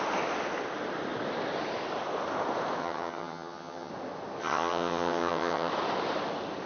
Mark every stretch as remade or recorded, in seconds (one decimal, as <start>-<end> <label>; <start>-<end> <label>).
0.0-2.8 recorded; 2.8-3.9 remade; 3.9-4.4 recorded; 4.4-5.7 remade; 5.7-6.7 recorded